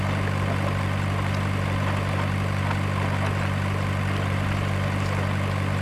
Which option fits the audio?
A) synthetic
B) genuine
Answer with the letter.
B